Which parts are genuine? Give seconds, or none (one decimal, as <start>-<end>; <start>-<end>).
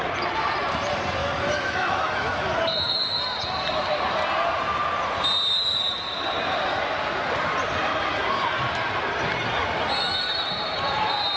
0.0-1.2; 3.2-11.4